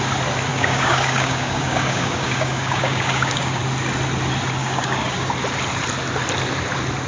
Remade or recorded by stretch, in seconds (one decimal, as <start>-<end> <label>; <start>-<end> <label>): 0.0-0.5 recorded; 0.5-3.6 remade; 3.6-4.6 recorded; 4.6-5.3 remade; 5.3-7.1 recorded